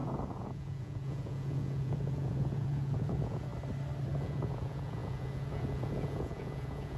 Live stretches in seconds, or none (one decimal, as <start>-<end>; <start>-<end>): 3.5-4.1